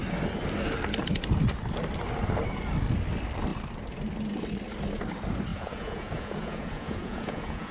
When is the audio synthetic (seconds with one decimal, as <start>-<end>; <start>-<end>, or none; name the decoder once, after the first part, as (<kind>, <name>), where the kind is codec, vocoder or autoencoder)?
5.5-7.7 (vocoder, Vocos)